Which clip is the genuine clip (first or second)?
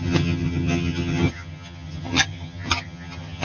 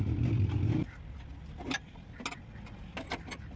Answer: second